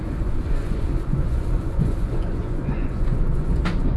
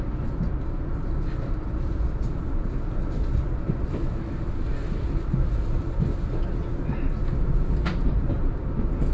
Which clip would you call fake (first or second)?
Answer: first